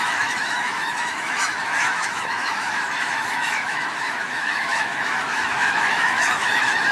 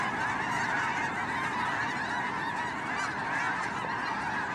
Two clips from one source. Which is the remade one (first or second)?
first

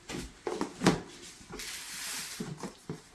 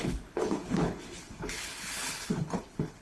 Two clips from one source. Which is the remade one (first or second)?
second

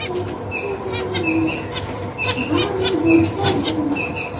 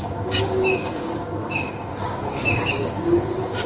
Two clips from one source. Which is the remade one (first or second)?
second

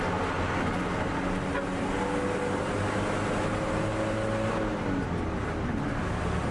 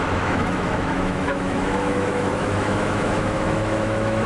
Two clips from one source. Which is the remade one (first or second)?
second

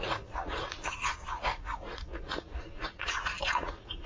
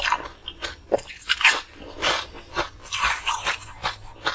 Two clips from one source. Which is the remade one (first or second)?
first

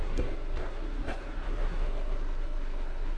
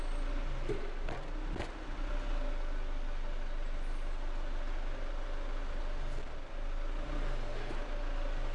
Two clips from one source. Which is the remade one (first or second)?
first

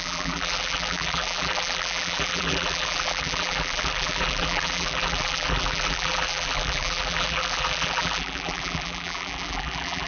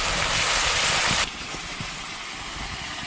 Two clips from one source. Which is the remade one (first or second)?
first